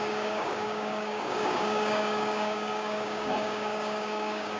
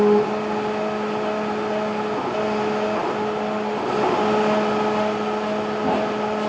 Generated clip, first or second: first